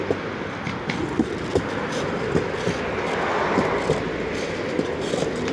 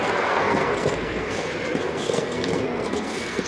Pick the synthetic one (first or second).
second